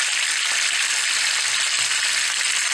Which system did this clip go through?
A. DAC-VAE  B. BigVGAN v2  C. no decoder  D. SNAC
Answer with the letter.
C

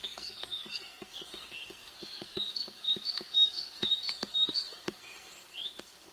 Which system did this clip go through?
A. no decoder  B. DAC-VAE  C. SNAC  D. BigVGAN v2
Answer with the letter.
C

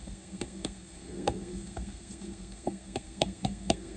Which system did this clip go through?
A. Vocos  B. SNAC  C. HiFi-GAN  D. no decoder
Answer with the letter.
B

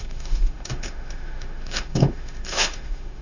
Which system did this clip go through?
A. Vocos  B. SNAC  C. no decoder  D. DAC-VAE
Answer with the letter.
D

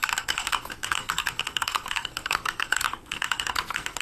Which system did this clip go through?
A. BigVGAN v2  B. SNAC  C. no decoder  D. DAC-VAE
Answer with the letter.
B